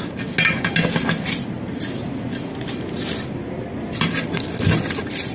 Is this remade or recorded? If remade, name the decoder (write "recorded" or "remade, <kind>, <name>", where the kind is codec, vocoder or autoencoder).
recorded